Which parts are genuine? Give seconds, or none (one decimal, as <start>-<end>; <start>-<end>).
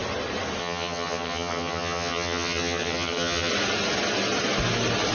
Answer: 0.0-0.6; 3.5-5.1